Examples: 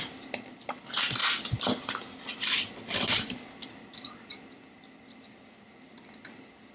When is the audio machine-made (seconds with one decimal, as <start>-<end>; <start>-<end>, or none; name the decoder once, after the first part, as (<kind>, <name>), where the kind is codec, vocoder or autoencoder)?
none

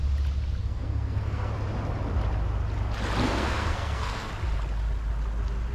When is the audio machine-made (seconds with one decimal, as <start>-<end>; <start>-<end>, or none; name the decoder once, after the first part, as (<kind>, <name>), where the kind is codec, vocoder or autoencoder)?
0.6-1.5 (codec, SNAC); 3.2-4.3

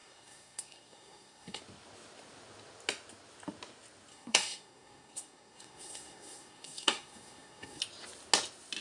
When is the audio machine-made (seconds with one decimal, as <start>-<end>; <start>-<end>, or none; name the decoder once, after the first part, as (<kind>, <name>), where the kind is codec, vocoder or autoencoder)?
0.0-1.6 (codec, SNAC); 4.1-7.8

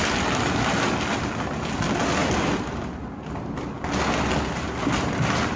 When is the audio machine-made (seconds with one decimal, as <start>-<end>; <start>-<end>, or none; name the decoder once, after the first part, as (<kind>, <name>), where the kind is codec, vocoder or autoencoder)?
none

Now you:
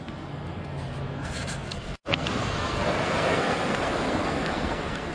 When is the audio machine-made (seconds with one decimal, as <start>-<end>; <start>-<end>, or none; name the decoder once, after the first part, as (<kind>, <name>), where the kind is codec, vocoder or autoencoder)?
0.0-5.1 (codec, SNAC)